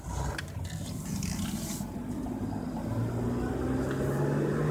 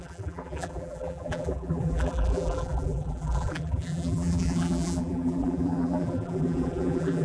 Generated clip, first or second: second